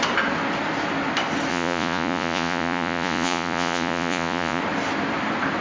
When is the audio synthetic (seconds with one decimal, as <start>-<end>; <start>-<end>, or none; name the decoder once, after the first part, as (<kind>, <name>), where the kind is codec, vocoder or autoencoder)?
1.5-4.6 (vocoder, Vocos)